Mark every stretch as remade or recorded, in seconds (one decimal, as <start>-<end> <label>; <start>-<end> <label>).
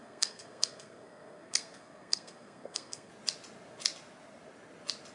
0.0-3.1 remade; 3.1-5.1 recorded